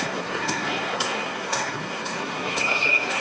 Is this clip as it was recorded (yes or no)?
no